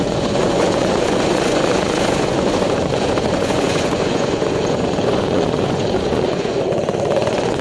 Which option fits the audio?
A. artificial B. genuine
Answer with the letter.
A